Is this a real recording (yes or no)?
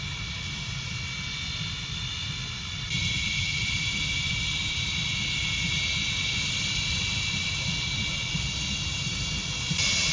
yes